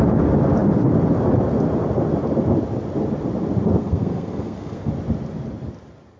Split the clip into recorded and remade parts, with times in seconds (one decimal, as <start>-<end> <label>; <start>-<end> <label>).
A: 0.0-3.8 recorded; 3.8-4.9 remade; 4.9-6.2 recorded